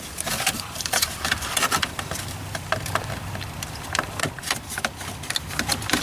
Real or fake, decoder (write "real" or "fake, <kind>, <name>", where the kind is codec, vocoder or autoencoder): fake, vocoder, BigVGAN v2